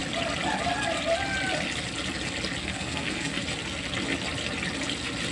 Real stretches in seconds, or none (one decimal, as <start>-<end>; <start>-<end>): 0.0-2.6; 3.4-5.3